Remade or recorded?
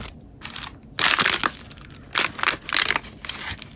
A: recorded